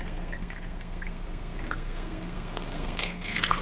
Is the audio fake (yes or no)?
yes